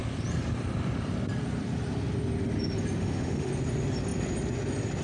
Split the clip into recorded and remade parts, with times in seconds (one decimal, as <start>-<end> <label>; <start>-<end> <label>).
0.0-3.0 recorded; 3.0-3.5 remade; 3.5-5.0 recorded